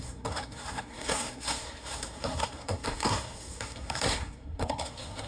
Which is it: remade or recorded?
remade